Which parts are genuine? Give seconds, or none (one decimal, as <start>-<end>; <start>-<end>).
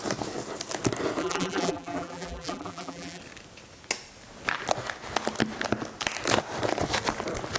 0.0-1.2; 3.2-7.6